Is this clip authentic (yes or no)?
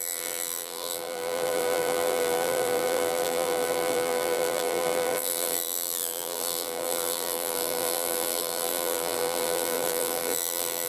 no